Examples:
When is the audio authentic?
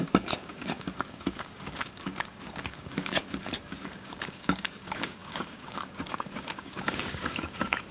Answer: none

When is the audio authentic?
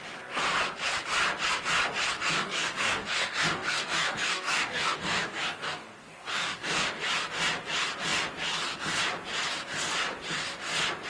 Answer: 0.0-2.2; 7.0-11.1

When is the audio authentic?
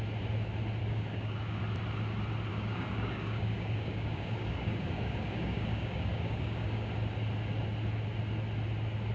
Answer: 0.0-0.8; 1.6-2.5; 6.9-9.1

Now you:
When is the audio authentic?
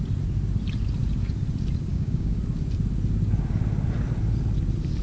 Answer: 0.0-1.9; 2.4-5.0